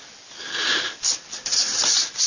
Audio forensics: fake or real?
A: fake